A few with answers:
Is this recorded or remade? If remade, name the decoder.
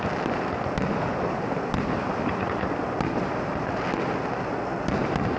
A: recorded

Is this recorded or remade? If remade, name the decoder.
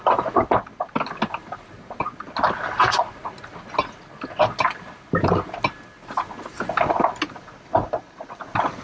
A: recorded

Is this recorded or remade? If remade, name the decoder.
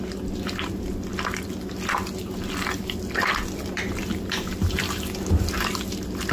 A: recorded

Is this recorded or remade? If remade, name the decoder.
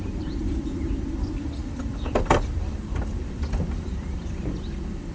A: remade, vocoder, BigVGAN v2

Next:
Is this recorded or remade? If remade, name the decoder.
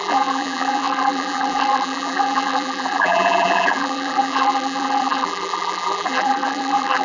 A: remade, vocoder, BigVGAN v2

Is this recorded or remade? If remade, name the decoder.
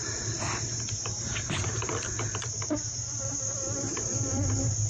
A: remade, vocoder, BigVGAN v2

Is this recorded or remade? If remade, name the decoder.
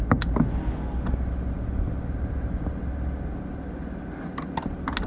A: recorded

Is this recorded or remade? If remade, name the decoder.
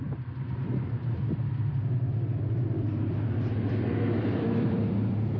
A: remade, vocoder, BigVGAN v2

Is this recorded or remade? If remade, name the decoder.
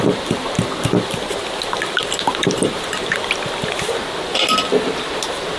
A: recorded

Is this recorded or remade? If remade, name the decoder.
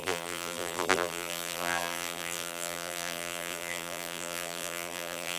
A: remade, vocoder, BigVGAN v2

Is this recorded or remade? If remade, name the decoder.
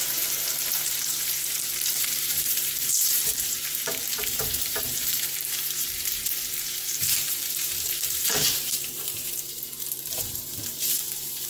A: remade, vocoder, BigVGAN v2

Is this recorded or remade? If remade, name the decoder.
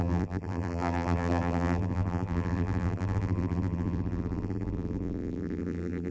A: remade, vocoder, BigVGAN v2